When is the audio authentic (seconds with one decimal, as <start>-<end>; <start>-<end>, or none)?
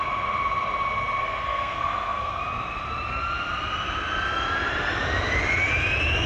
0.0-1.2; 2.4-6.3